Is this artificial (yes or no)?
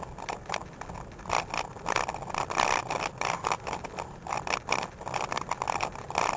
no